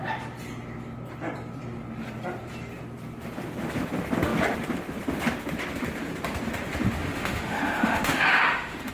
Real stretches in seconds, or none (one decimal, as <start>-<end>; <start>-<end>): 0.0-7.0